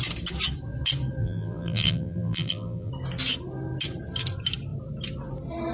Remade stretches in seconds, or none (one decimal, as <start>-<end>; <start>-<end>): 1.2-2.9